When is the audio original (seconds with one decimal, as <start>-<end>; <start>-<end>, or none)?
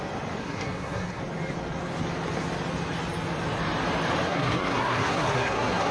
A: 0.0-0.4; 1.2-4.3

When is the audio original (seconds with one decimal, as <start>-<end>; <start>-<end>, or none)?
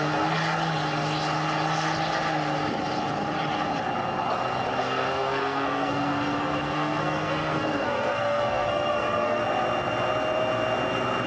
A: 0.0-4.8; 9.4-11.3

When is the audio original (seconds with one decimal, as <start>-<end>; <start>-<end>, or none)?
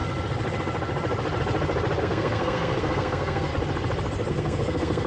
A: 0.0-2.0; 3.5-4.3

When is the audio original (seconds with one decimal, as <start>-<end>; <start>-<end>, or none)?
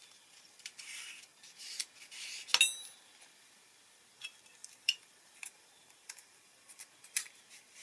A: 0.0-4.6; 6.7-7.8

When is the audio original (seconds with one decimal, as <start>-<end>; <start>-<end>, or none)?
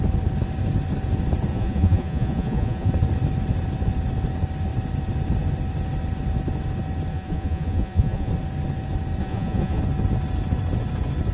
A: 0.0-1.5; 2.9-7.1; 8.3-9.2; 9.8-11.3